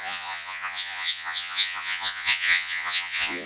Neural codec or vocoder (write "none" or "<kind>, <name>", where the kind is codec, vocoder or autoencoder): vocoder, Vocos